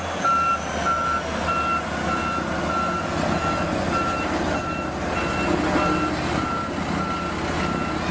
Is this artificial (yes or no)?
no